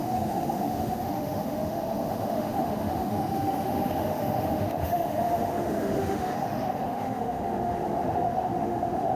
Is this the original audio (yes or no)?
no